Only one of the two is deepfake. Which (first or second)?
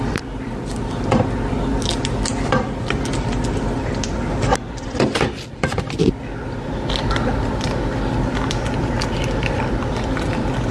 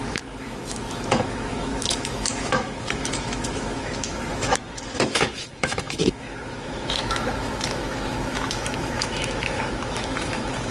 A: second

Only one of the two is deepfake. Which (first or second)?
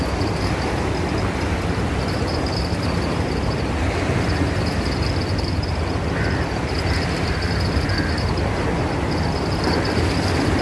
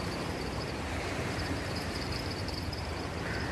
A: second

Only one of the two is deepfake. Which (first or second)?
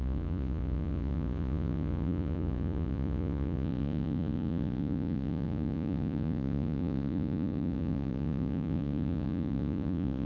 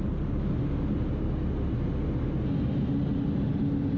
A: first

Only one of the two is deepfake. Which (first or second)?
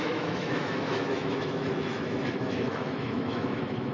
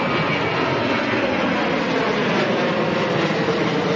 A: first